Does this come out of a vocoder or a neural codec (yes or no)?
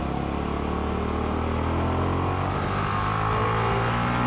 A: no